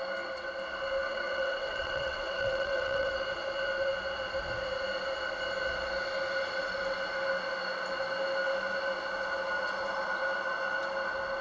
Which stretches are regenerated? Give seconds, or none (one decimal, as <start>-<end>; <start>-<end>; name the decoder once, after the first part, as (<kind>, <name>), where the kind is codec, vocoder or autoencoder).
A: 1.1-3.1 (vocoder, WaveNeXt)